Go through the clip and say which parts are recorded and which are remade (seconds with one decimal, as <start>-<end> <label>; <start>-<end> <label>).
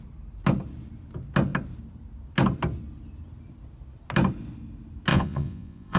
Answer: 0.0-5.1 recorded; 5.1-6.0 remade